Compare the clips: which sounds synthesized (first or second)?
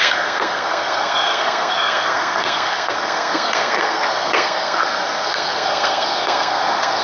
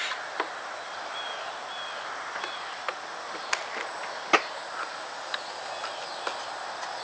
first